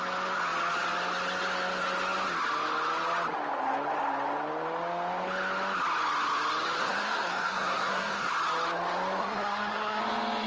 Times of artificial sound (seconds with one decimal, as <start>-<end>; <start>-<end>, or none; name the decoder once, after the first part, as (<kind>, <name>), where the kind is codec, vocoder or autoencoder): 6.8-8.3 (codec, SNAC); 9.2-10.0